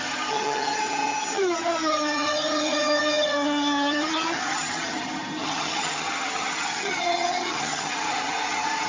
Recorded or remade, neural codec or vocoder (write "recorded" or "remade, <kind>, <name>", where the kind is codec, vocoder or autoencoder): remade, vocoder, HiFi-GAN